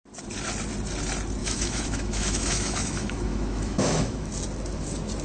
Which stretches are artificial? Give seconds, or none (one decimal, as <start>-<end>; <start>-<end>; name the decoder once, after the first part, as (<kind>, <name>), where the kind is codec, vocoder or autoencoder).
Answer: 1.4-4.3 (autoencoder, DAC-VAE)